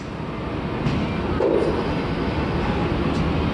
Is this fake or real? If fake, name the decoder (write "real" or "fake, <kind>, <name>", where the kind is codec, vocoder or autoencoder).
real